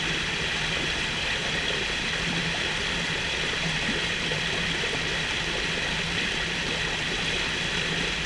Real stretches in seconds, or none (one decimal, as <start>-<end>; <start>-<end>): 0.0-1.4; 2.4-8.3